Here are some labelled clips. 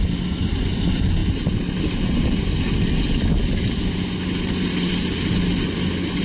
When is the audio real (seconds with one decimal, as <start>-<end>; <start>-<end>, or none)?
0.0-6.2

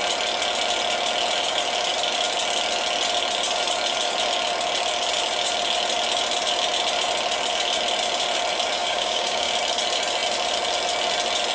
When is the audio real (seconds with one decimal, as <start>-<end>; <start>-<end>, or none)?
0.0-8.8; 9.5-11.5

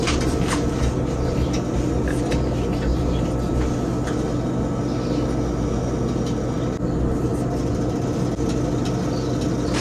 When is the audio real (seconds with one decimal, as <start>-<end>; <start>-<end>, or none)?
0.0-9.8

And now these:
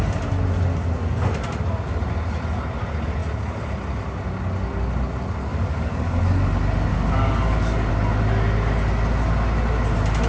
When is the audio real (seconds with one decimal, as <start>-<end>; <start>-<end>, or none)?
0.0-5.5; 6.2-6.9; 7.9-10.3